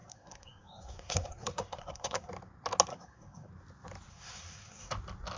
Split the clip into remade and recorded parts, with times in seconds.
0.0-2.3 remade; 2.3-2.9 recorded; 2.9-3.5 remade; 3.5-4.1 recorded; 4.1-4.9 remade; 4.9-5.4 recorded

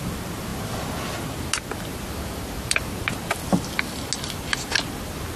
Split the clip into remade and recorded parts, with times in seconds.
0.0-5.4 recorded

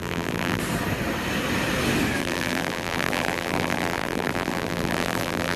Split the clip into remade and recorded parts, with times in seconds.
0.0-0.6 remade; 0.6-2.2 recorded; 2.2-5.6 remade

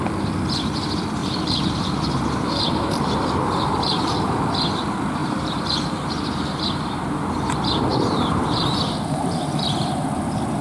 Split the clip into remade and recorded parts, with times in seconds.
0.0-1.2 recorded; 1.2-4.4 remade; 4.4-5.2 recorded; 5.2-7.3 remade; 7.3-7.9 recorded; 7.9-9.9 remade; 9.9-10.6 recorded